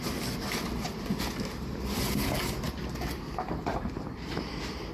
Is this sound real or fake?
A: real